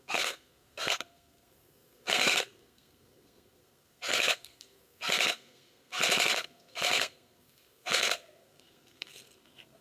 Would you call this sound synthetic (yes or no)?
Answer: yes